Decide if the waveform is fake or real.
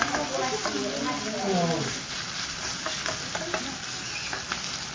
real